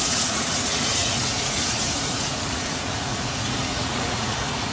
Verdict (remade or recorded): remade